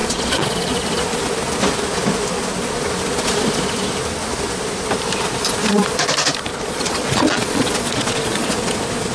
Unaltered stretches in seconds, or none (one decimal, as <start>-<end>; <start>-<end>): 0.7-6.5; 8.5-9.1